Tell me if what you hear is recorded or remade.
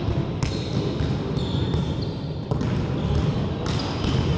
recorded